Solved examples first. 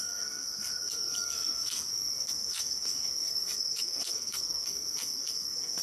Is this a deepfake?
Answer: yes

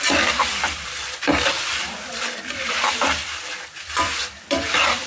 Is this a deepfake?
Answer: yes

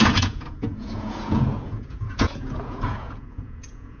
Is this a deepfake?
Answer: yes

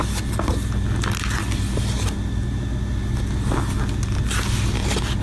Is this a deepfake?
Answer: no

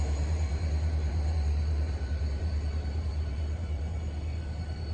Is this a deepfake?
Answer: yes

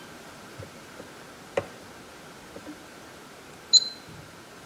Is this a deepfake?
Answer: no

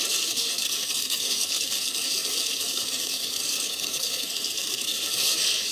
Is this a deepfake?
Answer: yes